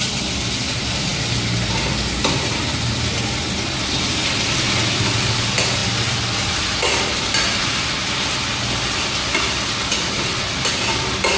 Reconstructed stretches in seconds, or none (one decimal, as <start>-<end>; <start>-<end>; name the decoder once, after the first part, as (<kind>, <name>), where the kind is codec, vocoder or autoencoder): none